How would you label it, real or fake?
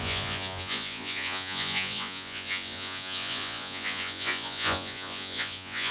fake